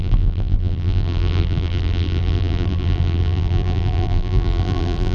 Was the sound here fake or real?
fake